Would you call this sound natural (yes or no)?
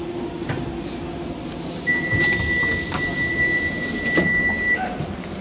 yes